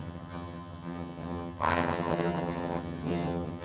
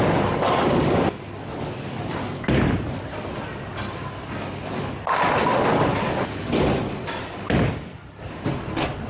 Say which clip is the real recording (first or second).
second